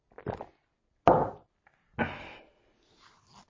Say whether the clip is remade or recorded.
recorded